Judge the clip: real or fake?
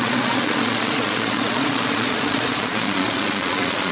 fake